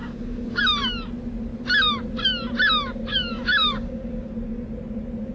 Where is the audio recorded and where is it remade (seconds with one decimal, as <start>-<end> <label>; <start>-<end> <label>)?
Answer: 0.0-0.6 remade; 0.6-3.1 recorded; 3.1-4.3 remade; 4.3-5.3 recorded